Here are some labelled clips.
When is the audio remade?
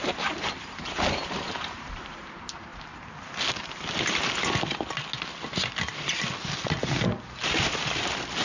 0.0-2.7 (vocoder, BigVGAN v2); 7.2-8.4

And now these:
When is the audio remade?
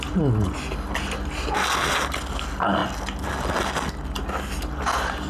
none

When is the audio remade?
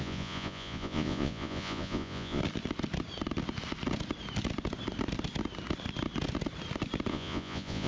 0.0-2.4 (vocoder, Vocos); 7.1-7.9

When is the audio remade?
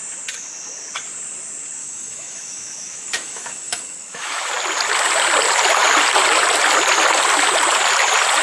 1.8-4.5 (autoencoder, DAC-VAE)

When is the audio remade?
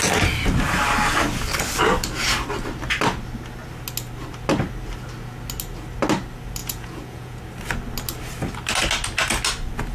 6.6-7.4 (vocoder, Vocos)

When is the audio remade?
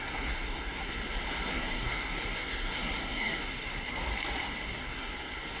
0.0-1.0 (codec, SNAC); 1.5-4.1; 4.8-5.6